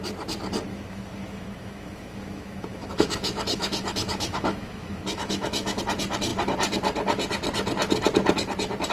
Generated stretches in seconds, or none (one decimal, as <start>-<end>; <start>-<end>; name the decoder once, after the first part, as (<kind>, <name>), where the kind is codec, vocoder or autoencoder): 0.7-5.8 (autoencoder, DAC-VAE)